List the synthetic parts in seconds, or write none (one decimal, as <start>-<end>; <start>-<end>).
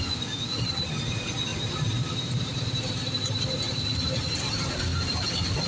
1.5-3.4